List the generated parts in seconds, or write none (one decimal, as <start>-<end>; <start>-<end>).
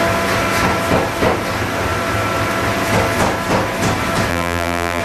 4.3-5.0